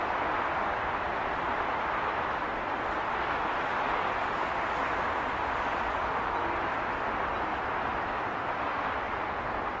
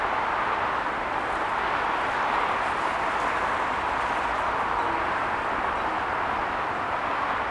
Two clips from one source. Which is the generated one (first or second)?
first